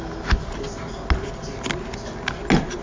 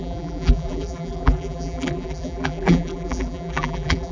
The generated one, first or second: second